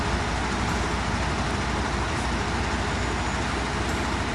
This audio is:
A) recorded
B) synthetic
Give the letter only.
A